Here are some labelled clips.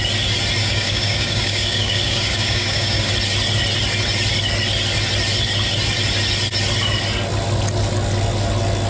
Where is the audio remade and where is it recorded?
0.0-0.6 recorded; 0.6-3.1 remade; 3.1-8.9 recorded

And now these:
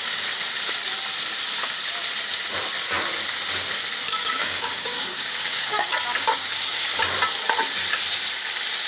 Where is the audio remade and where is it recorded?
0.0-4.1 recorded; 4.1-7.0 remade; 7.0-8.9 recorded